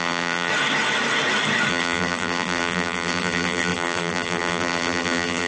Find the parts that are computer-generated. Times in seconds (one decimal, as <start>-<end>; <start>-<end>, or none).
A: 0.0-0.5; 1.7-5.5